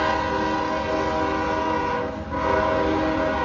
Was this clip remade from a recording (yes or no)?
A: no